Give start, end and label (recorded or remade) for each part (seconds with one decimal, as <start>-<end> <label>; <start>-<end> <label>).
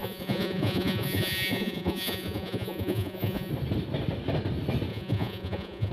0.0-3.5 remade; 3.5-4.9 recorded; 4.9-5.9 remade